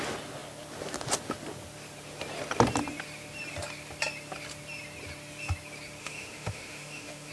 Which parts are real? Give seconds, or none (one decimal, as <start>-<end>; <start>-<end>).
0.0-6.0